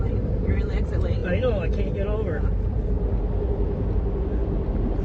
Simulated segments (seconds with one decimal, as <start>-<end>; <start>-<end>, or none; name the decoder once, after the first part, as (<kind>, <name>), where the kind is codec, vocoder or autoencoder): none